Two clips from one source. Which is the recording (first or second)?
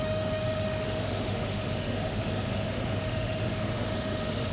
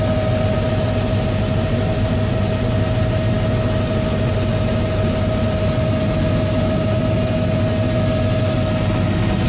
second